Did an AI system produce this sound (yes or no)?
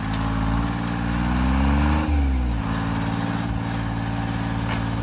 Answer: no